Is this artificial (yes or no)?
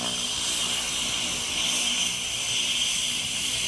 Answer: no